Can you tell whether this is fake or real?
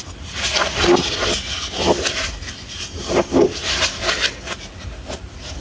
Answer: real